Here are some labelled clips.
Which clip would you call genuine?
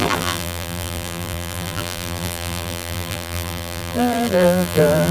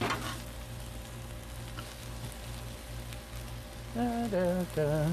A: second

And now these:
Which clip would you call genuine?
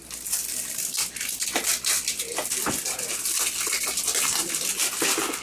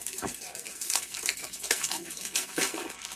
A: first